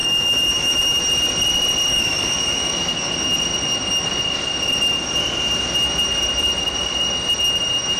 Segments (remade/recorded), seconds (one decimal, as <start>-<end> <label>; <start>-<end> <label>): 0.0-1.0 remade; 1.0-1.9 recorded; 1.9-2.9 remade; 2.9-8.0 recorded